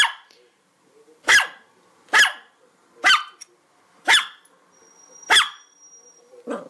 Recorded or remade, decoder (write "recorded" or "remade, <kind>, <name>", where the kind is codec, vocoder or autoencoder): recorded